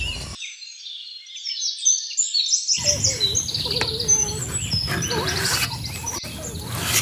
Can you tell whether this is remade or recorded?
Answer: recorded